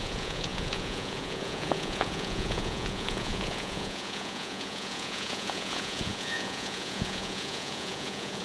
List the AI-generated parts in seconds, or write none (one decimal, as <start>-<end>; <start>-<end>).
0.0-8.4